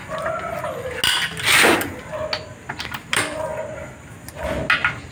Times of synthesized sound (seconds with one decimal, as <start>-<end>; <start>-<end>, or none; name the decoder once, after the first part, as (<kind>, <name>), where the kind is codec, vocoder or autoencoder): none